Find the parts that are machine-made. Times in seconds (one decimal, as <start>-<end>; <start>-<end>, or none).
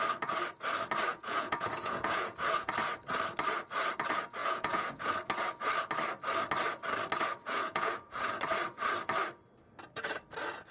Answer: 1.1-2.7; 4.4-5.1; 7.4-8.4